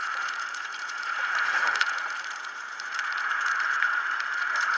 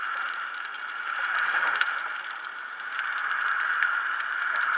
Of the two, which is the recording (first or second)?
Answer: second